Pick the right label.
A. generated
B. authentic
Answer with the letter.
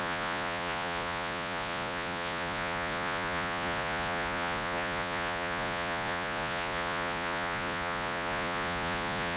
A